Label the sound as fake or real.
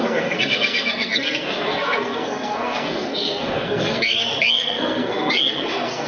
fake